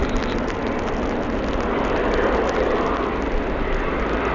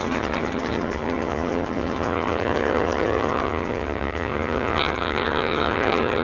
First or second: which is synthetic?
second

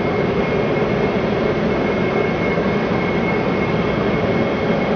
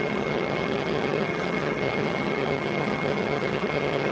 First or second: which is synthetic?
second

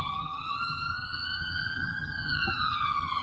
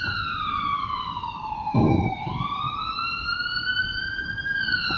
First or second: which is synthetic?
first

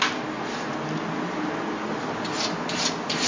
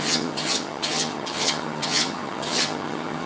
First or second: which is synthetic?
second